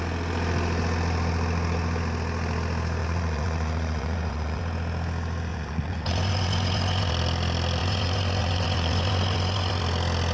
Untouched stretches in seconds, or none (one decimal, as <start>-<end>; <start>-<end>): 0.0-3.0; 4.6-5.5; 7.1-7.8; 9.8-10.3